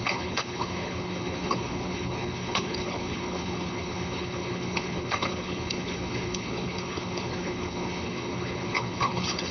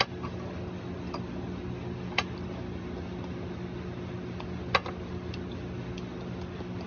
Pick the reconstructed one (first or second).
first